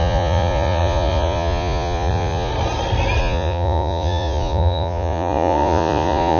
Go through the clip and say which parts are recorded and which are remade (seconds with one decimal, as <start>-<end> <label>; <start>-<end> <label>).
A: 0.0-2.5 remade; 2.5-3.2 recorded; 3.2-6.4 remade